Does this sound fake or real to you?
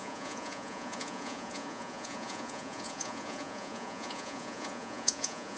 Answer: fake